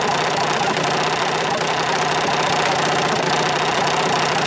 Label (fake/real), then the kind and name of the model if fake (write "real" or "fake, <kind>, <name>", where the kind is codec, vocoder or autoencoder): real